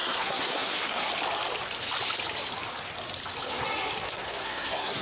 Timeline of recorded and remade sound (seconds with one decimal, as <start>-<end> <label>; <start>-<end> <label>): 0.0-1.1 remade; 1.1-4.1 recorded; 4.1-5.0 remade